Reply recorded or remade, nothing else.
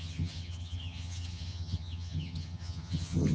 remade